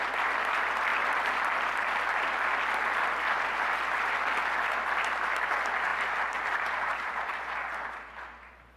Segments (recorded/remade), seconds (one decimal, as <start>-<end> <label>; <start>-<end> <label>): 0.0-5.9 recorded; 5.9-8.8 remade